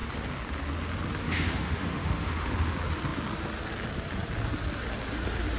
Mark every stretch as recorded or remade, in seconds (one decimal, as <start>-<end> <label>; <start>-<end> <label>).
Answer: 0.0-1.2 recorded; 1.2-2.5 remade; 2.5-5.6 recorded